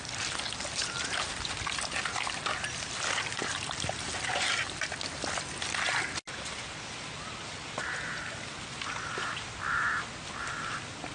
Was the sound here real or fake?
real